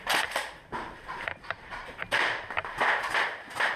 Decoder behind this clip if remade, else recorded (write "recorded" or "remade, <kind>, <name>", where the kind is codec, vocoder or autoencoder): remade, vocoder, BigVGAN v2